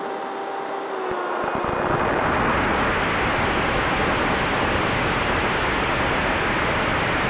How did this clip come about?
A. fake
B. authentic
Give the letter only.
B